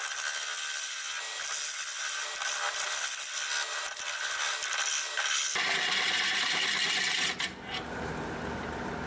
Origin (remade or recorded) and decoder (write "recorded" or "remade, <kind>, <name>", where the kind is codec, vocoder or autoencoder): recorded